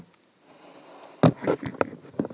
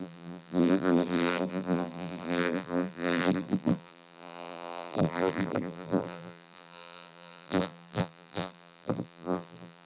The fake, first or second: second